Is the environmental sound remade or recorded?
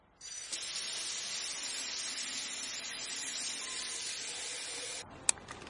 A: recorded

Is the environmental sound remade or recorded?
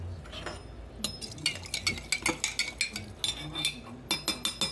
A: recorded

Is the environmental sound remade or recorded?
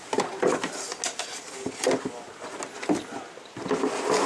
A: recorded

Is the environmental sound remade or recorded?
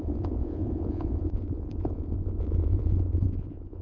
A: remade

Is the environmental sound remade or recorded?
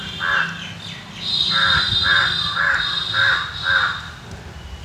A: recorded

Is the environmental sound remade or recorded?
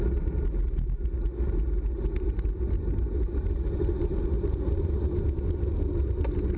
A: recorded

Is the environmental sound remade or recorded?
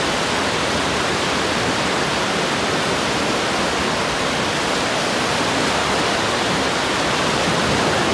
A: recorded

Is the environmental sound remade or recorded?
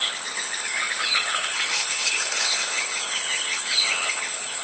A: remade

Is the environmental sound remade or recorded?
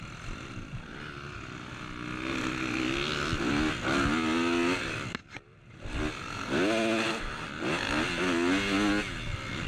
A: recorded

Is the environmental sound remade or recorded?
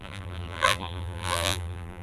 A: remade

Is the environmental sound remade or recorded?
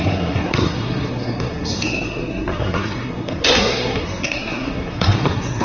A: remade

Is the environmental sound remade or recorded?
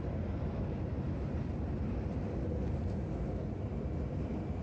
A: recorded